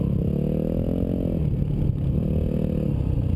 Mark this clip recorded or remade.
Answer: recorded